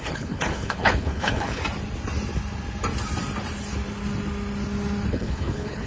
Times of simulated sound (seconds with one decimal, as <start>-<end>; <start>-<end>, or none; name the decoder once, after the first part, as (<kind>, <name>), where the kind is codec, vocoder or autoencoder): 0.0-1.6 (codec, HILCodec); 5.1-5.9